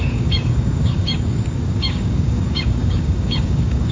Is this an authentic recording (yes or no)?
no